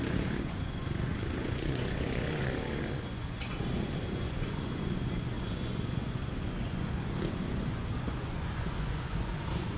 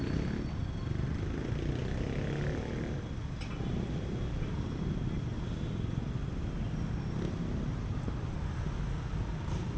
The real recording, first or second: second